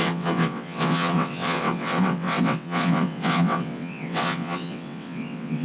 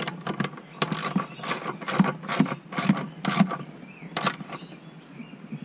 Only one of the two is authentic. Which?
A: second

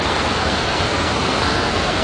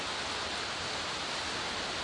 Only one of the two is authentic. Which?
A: second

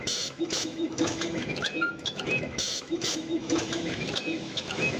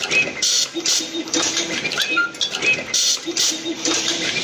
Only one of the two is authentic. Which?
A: second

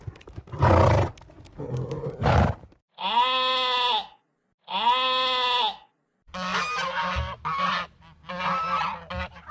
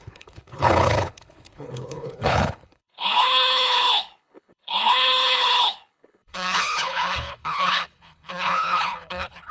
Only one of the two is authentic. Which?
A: first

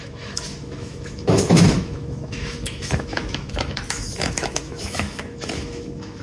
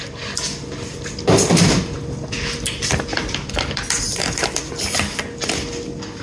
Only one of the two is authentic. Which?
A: second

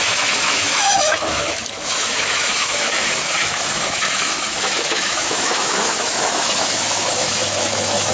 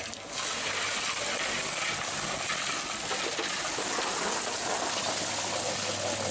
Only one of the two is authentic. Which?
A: second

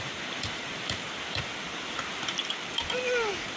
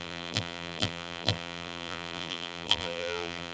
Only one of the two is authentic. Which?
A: first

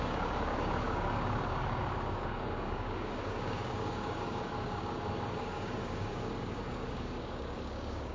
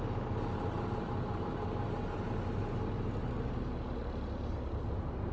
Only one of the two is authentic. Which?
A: second